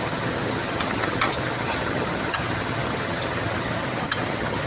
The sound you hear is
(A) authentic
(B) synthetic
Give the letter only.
B